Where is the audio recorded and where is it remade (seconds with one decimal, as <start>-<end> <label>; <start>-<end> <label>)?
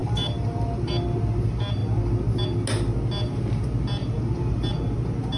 0.0-0.9 remade; 0.9-4.0 recorded; 4.0-4.7 remade; 4.7-5.4 recorded